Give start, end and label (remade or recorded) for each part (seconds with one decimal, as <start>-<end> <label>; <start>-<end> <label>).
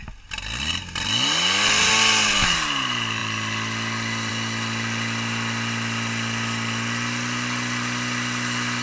0.0-8.8 recorded